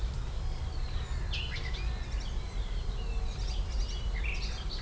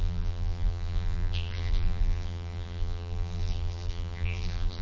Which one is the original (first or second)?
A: first